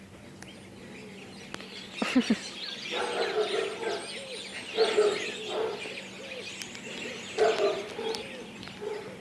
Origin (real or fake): real